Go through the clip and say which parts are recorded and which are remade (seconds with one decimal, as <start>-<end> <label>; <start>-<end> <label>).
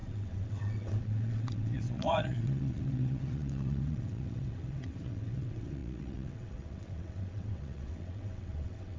0.0-9.0 remade